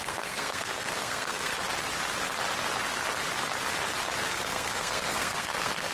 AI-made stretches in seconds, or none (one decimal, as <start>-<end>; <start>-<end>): 0.0-1.5; 4.3-5.9

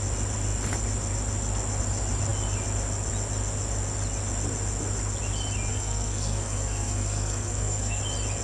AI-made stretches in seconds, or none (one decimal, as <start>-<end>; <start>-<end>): 5.7-8.0